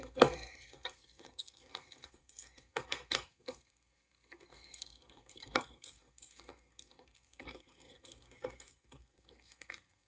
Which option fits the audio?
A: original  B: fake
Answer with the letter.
B